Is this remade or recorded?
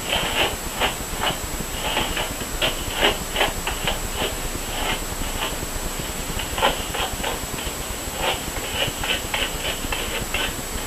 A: recorded